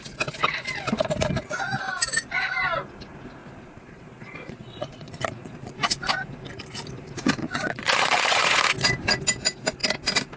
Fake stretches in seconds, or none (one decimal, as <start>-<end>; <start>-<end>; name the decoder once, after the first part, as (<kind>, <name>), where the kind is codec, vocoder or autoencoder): 3.4-5.7 (vocoder, Vocos); 7.4-8.6